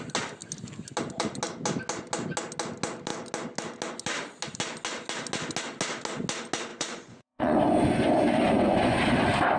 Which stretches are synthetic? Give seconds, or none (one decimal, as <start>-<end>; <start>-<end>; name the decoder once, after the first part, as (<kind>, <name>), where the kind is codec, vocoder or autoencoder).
6.7-9.0 (vocoder, Vocos)